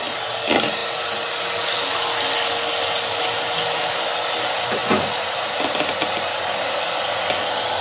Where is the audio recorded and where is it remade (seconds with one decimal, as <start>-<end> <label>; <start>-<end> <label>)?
0.0-7.8 recorded